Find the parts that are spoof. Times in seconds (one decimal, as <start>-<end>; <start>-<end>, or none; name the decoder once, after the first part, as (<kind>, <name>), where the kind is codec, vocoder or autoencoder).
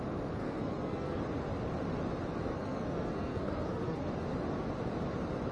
0.4-1.2 (codec, SNAC); 2.5-4.1